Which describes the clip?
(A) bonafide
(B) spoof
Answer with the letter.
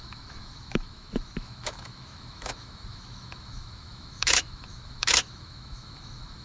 B